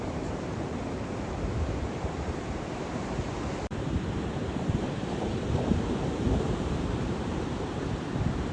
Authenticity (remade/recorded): remade